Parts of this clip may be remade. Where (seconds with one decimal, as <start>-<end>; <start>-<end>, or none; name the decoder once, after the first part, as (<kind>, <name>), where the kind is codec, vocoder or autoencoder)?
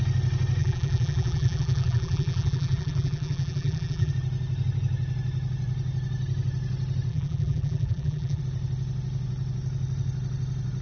0.6-4.1 (vocoder, BigVGAN v2); 7.1-8.4